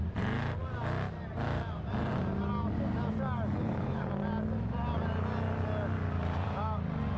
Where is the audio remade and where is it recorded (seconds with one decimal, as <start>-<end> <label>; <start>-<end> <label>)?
0.0-3.6 recorded; 3.6-4.1 remade; 4.1-7.2 recorded

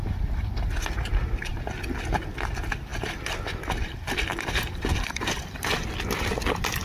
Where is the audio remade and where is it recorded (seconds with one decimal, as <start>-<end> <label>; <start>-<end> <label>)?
0.0-6.8 recorded

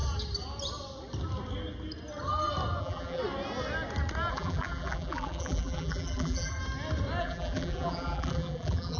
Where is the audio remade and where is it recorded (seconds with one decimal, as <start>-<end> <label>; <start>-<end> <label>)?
0.0-2.8 recorded; 2.8-3.2 remade; 3.2-4.3 recorded; 4.3-6.6 remade; 6.6-7.2 recorded; 7.2-9.0 remade

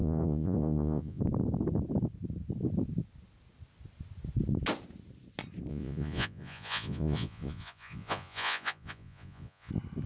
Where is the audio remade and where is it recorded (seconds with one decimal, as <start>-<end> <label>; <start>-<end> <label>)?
0.0-1.2 remade; 1.2-5.7 recorded; 5.7-9.7 remade; 9.7-10.1 recorded

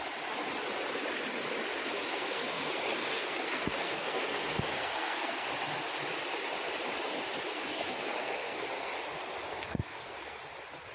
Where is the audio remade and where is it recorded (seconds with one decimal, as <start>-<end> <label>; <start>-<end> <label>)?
0.0-2.1 recorded; 2.1-5.5 remade; 5.5-7.5 recorded; 7.5-8.9 remade; 8.9-9.5 recorded; 9.5-10.4 remade; 10.4-10.9 recorded

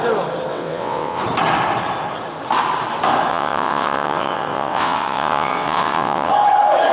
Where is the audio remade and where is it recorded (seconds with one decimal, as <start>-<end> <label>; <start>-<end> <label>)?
0.0-0.5 recorded; 0.5-1.2 remade; 1.2-3.3 recorded; 3.3-6.3 remade; 6.3-6.9 recorded

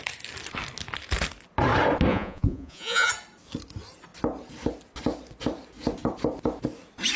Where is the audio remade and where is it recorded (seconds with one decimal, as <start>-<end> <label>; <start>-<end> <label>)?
0.0-2.1 recorded; 2.1-3.1 remade; 3.1-7.2 recorded

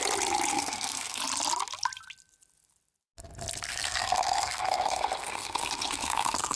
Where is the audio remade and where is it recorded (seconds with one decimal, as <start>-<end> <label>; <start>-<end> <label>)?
0.0-0.5 recorded; 0.5-1.2 remade; 1.2-3.7 recorded; 3.7-6.6 remade